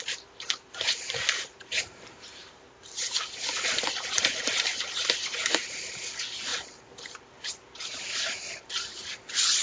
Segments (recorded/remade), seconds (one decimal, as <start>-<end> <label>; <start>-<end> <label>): 0.0-3.1 remade; 3.1-5.4 recorded; 5.4-6.5 remade; 6.5-7.1 recorded; 7.1-9.6 remade